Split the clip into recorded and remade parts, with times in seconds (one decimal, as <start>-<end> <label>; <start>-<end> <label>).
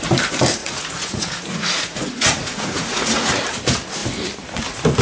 0.0-0.6 recorded; 0.6-3.3 remade; 3.3-5.0 recorded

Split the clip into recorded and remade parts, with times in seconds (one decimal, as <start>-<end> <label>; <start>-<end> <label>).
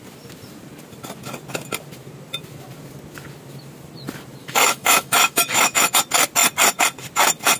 0.0-4.4 recorded; 4.4-5.9 remade; 5.9-7.6 recorded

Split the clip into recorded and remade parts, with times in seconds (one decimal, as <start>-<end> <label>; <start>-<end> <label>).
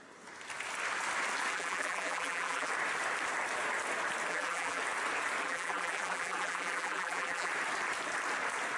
0.0-1.5 recorded; 1.5-2.7 remade; 2.7-4.3 recorded; 4.3-4.8 remade; 4.8-5.4 recorded; 5.4-7.5 remade; 7.5-8.8 recorded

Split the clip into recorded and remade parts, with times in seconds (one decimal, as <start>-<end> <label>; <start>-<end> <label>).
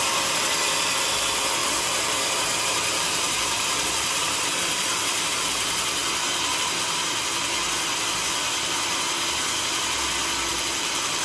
0.0-1.6 recorded; 1.6-5.5 remade; 5.5-10.5 recorded; 10.5-11.2 remade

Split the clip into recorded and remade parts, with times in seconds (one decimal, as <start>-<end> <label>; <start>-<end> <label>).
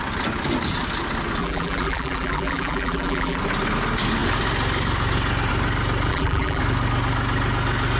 0.0-1.4 recorded; 1.4-3.4 remade; 3.4-6.1 recorded; 6.1-6.6 remade; 6.6-8.0 recorded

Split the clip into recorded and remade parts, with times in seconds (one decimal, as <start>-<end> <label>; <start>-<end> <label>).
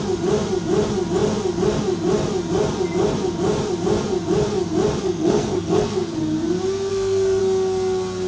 0.0-5.0 recorded; 5.0-6.2 remade; 6.2-6.9 recorded; 6.9-7.4 remade; 7.4-8.3 recorded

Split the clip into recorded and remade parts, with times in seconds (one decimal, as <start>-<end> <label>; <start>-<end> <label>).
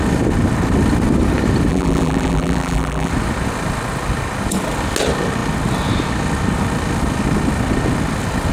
0.0-1.7 recorded; 1.7-3.1 remade; 3.1-8.5 recorded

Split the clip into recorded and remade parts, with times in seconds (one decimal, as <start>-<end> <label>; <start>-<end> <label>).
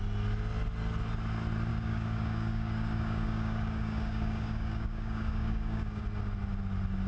0.0-1.7 recorded; 1.7-6.0 remade; 6.0-7.1 recorded